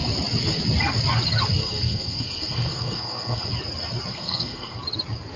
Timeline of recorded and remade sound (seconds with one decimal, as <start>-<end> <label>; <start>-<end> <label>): 0.0-1.6 recorded; 1.6-3.5 remade; 3.5-4.1 recorded; 4.1-4.8 remade; 4.8-5.4 recorded